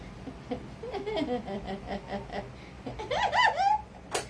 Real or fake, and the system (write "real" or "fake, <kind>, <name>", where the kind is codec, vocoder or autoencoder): real